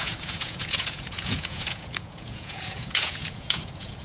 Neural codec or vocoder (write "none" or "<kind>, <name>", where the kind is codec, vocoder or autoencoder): vocoder, Vocos